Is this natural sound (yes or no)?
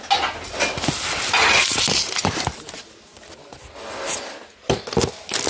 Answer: yes